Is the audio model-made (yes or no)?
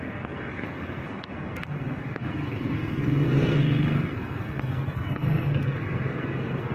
yes